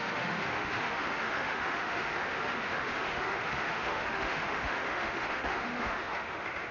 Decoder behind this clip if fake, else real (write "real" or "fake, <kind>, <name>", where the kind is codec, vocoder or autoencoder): fake, autoencoder, DAC-VAE